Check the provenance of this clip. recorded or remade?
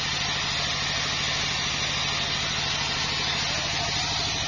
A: recorded